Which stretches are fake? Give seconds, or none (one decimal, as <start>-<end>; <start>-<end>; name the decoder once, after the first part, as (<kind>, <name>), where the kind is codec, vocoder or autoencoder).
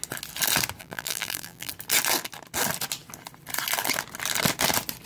0.8-1.7 (vocoder, BigVGAN v2)